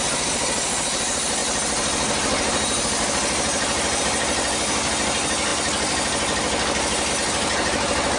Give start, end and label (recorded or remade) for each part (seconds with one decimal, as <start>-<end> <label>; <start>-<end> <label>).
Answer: 0.0-8.2 recorded